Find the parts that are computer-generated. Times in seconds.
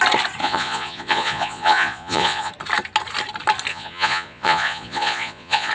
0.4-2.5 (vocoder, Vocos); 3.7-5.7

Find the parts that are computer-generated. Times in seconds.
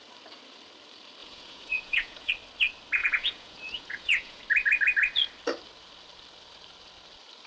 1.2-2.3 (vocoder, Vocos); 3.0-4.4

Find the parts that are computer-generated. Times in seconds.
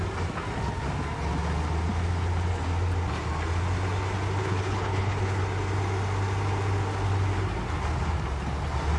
4.4-5.4 (codec, HILCodec)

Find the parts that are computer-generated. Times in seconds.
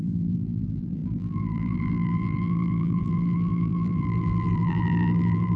0.0-5.6 (vocoder, BigVGAN v2)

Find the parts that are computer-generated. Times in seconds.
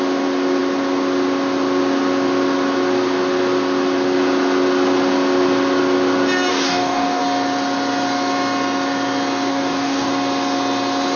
6.5-7.2 (codec, DAC); 9.5-10.1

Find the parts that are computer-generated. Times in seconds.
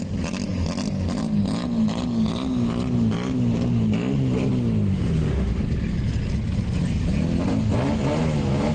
4.9-5.6 (autoencoder, DAC-VAE)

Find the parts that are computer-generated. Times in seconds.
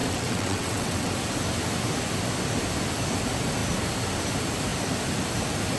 0.0-1.1 (vocoder, WaveNeXt)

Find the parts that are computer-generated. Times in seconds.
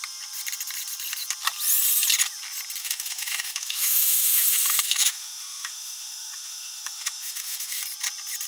2.8-7.8 (autoencoder, DAC-VAE)